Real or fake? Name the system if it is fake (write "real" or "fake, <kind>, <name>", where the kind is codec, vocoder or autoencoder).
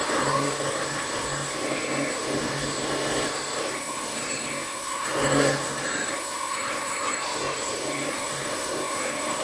fake, codec, SNAC